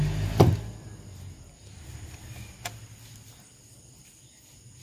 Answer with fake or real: real